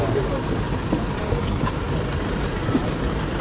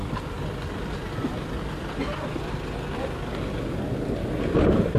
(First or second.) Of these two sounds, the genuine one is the second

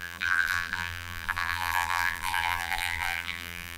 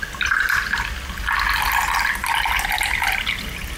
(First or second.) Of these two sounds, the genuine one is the second